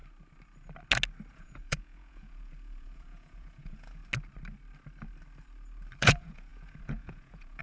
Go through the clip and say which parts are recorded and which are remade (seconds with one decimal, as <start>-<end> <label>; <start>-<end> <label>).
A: 0.0-1.3 recorded; 1.3-4.0 remade; 4.0-6.0 recorded; 6.0-7.6 remade